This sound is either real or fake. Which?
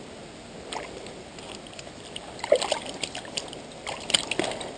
real